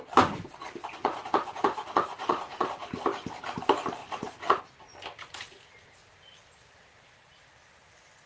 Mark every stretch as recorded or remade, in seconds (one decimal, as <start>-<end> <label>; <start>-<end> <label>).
0.0-1.0 recorded; 1.0-2.7 remade; 2.7-4.0 recorded; 4.0-4.6 remade; 4.6-8.3 recorded